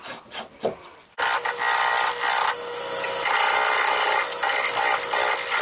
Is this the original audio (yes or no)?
yes